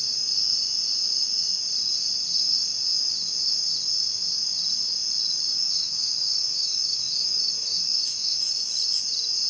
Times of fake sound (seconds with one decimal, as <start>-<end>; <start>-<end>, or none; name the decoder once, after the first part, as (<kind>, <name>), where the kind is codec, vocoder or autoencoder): 5.5-8.5 (autoencoder, DAC-VAE)